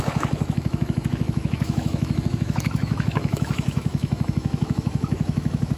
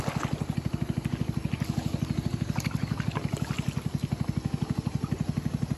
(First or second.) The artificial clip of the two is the first